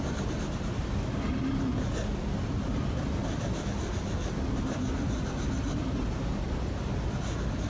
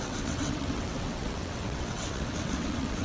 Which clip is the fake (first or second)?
second